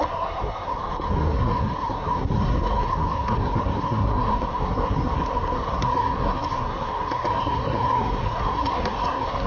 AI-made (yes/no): yes